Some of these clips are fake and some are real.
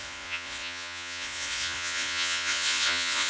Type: fake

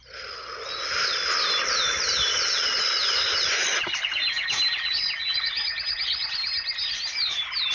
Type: real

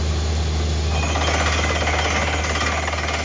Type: real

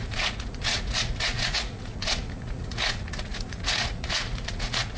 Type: fake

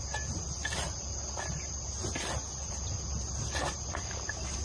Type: real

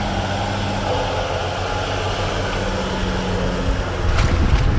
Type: real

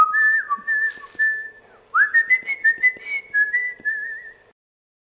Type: real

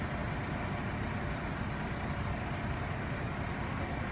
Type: real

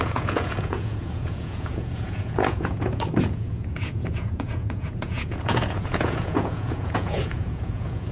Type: fake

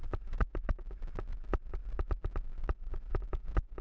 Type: real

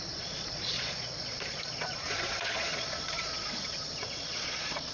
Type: fake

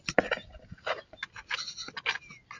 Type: real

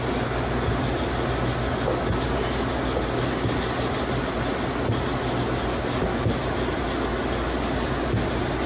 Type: real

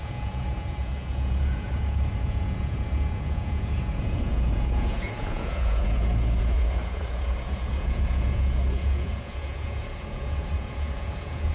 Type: fake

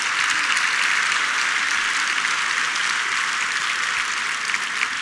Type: real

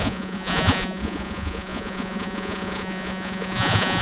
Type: fake